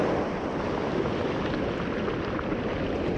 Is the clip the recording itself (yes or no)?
yes